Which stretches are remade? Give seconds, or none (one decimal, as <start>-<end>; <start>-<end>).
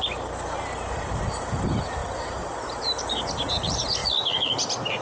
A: none